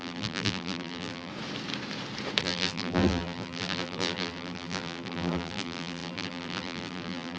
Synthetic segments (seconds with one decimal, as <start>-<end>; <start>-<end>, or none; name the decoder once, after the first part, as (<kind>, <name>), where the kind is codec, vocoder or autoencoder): 0.0-1.3 (vocoder, BigVGAN v2); 2.4-7.4